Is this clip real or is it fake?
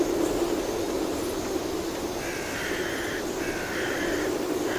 real